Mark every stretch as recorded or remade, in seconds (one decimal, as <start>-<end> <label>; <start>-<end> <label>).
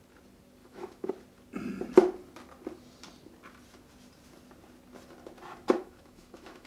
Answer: 0.0-0.6 recorded; 0.6-1.1 remade; 1.1-5.8 recorded; 5.8-6.7 remade